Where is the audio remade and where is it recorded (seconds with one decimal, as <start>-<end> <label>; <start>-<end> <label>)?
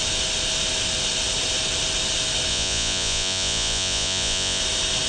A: 0.0-2.5 recorded; 2.5-4.6 remade; 4.6-5.1 recorded